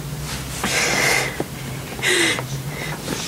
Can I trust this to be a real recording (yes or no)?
yes